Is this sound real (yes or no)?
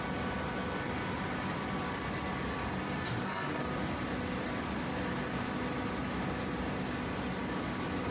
yes